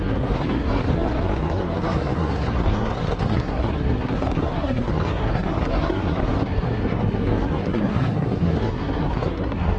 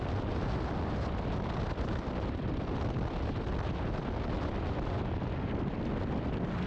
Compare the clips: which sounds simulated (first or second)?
first